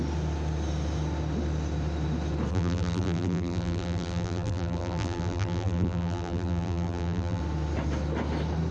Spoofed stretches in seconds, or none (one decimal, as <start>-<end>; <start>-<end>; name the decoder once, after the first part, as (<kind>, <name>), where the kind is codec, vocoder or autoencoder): 2.5-7.4 (vocoder, BigVGAN v2)